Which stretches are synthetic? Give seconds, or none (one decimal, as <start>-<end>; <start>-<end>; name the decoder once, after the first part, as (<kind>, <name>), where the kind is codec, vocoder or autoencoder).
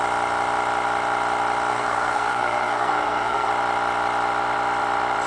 1.7-3.5 (codec, SNAC)